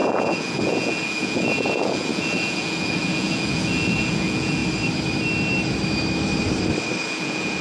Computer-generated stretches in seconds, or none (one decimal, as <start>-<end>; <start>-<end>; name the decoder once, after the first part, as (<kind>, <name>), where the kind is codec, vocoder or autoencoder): 0.0-4.6 (vocoder, Vocos); 7.0-7.6